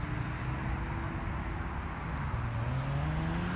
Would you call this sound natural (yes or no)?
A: yes